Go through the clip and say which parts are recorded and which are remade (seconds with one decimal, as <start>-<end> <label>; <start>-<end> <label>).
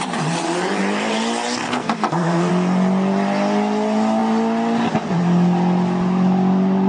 0.0-1.6 recorded; 1.6-2.5 remade; 2.5-6.9 recorded